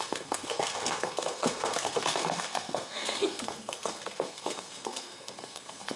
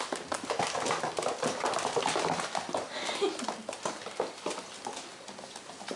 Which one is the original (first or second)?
second